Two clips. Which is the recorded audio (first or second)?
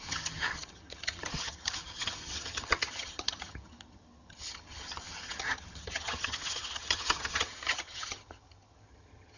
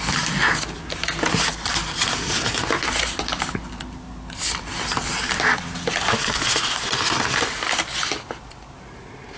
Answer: second